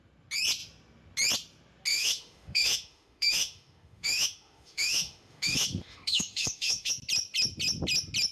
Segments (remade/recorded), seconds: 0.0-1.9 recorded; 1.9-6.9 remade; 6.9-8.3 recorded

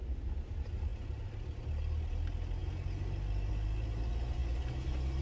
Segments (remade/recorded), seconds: 0.0-5.2 recorded